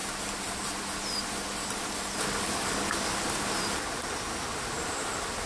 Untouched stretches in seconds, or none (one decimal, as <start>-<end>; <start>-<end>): 3.3-5.5